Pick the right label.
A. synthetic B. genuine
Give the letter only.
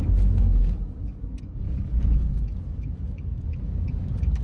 A